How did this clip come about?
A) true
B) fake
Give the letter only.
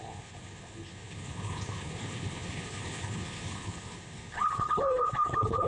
B